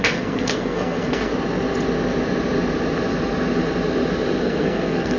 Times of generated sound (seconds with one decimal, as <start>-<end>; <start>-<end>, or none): 0.0-1.3; 4.4-5.2